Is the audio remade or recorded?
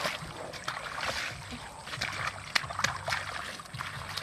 recorded